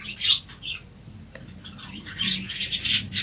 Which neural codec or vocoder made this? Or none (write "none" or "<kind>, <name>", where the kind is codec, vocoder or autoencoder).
none